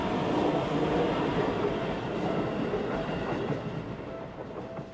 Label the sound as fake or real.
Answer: real